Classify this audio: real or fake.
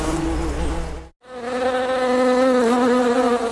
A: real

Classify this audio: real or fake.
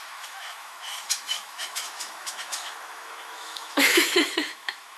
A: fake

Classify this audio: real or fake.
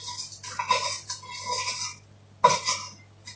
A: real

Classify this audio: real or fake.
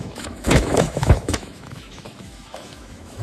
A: fake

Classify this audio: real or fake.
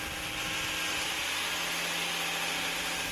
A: real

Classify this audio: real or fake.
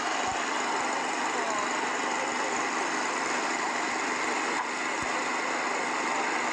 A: real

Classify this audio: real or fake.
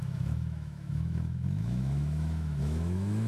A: fake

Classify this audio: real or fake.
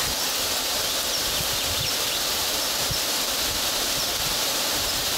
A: real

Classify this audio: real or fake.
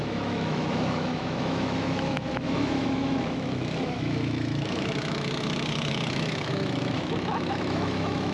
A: fake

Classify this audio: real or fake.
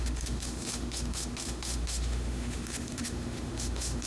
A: fake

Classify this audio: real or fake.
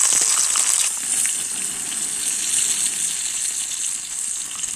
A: real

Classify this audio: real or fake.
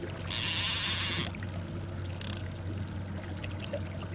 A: real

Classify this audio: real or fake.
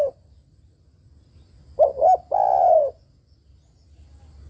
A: real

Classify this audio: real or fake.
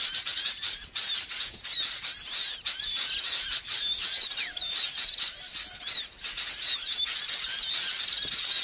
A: real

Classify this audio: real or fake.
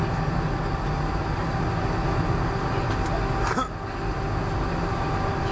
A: real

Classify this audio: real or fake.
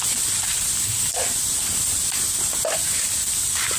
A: real